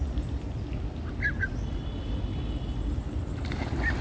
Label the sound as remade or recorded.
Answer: recorded